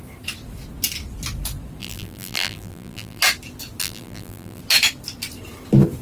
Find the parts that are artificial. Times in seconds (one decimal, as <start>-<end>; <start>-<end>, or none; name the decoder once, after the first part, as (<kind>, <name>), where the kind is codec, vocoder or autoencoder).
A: 1.8-3.2 (vocoder, BigVGAN v2); 3.8-4.6